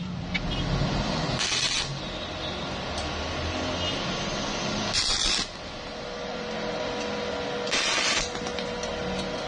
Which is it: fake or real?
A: real